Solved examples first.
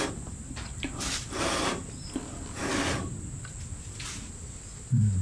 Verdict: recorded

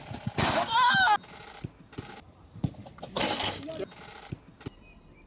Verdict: recorded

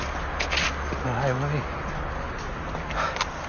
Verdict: recorded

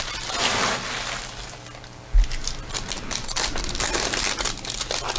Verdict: recorded